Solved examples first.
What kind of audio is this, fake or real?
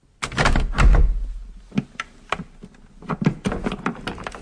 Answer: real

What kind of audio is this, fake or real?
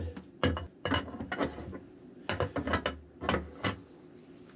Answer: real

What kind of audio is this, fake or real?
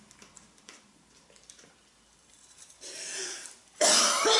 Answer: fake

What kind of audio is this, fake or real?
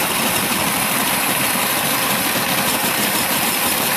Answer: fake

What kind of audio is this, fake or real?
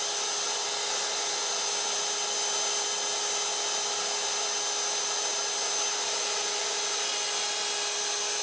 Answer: real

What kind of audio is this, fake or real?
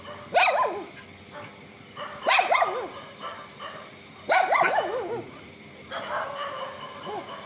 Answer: real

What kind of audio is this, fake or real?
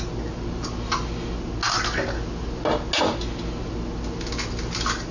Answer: real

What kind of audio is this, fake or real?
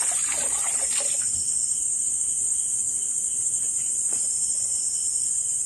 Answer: real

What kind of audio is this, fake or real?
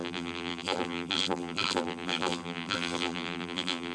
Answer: fake